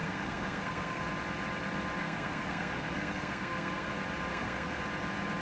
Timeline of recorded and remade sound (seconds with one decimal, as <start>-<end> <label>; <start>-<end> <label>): 0.0-1.1 remade; 1.1-2.0 recorded; 2.0-3.9 remade; 3.9-4.3 recorded; 4.3-4.8 remade; 4.8-5.4 recorded